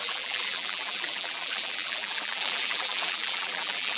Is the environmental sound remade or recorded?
remade